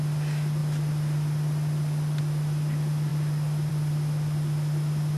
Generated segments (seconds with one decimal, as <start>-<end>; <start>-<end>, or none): none